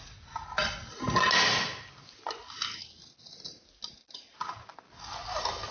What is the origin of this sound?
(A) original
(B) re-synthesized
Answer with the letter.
A